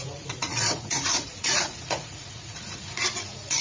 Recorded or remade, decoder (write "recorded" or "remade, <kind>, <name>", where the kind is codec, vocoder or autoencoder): remade, vocoder, Vocos